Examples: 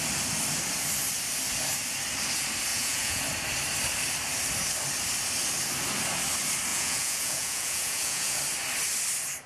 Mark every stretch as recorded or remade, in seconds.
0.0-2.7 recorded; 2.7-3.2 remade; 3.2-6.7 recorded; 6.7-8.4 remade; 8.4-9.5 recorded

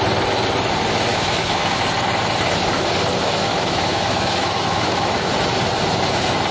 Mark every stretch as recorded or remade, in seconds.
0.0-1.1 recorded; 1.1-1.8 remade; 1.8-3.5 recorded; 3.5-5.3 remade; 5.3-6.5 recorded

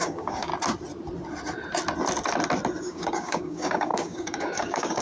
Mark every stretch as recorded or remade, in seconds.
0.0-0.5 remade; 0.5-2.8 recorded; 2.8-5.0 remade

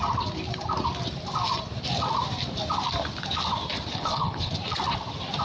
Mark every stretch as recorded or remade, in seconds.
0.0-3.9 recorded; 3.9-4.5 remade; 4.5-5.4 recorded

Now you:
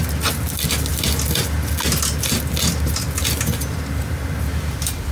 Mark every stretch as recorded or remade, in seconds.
0.0-5.1 recorded